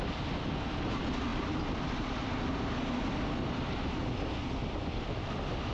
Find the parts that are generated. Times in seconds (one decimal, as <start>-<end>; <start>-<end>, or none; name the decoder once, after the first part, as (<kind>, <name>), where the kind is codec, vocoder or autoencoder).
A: none